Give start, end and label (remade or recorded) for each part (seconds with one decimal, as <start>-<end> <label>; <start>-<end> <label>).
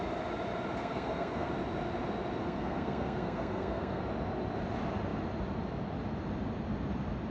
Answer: 0.0-0.8 recorded; 0.8-1.5 remade; 1.5-2.4 recorded; 2.4-4.0 remade; 4.0-7.3 recorded